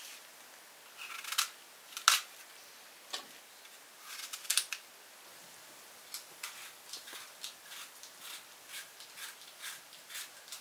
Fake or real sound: real